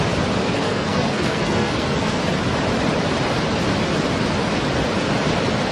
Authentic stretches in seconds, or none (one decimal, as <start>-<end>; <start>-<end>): 0.0-0.4; 2.2-5.7